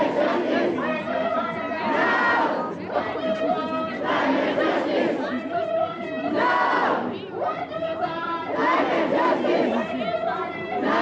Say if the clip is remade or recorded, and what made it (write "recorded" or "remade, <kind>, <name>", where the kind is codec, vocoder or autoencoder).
recorded